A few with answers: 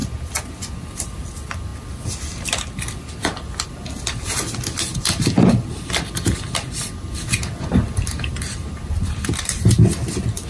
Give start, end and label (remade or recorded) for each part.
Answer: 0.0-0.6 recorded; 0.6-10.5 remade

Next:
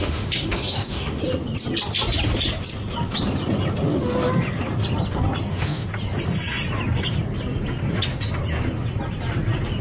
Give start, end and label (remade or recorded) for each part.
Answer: 0.0-1.2 remade; 1.2-5.5 recorded; 5.5-5.9 remade; 5.9-9.8 recorded